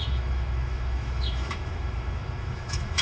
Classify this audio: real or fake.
fake